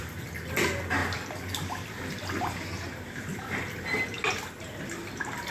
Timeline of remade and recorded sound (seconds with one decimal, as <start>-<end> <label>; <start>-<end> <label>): 0.0-5.5 recorded